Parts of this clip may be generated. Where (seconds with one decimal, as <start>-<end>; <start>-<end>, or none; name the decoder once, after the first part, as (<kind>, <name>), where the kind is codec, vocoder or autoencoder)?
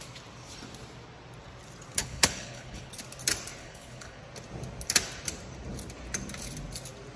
2.0-2.9 (codec, HILCodec); 3.6-4.2